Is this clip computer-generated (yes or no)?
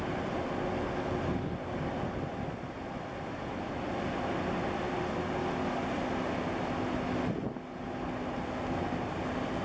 no